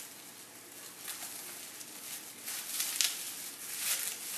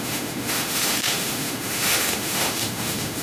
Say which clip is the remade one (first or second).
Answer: second